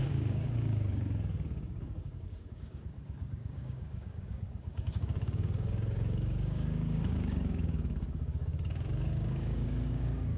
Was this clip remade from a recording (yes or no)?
yes